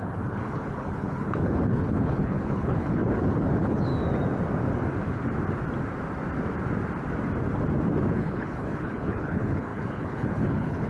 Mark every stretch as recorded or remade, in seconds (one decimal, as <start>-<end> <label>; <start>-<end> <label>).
0.0-3.9 remade; 3.9-8.1 recorded; 8.1-10.9 remade